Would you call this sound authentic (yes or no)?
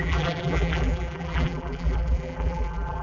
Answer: no